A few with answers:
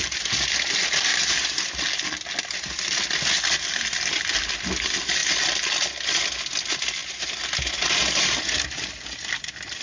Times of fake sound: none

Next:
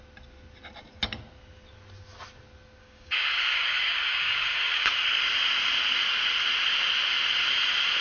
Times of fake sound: 2.8-5.0 (codec, DAC)

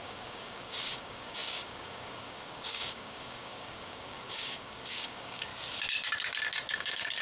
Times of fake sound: 0.0-5.5 (codec, DAC); 6.7-7.2